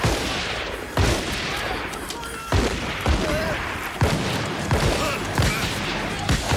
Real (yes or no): yes